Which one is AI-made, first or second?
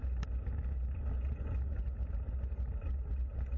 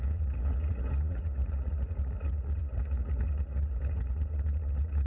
second